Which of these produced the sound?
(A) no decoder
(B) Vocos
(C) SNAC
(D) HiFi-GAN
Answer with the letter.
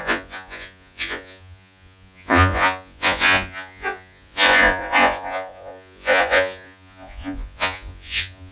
B